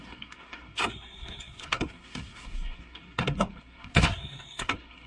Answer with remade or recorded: remade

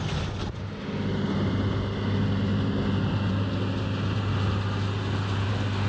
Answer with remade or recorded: recorded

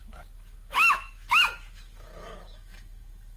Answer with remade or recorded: remade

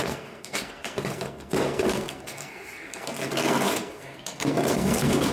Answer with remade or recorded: remade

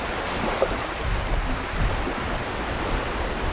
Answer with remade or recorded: recorded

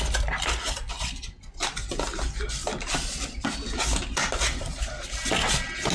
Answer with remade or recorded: recorded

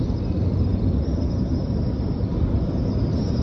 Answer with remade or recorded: recorded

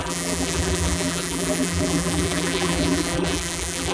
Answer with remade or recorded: remade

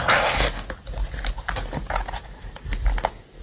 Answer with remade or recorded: recorded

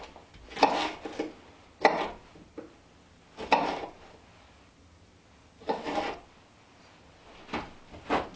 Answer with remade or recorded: recorded